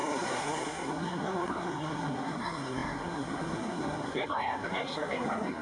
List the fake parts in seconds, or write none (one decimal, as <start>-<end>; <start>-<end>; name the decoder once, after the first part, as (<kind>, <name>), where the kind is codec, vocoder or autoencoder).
0.0-5.6 (codec, SNAC)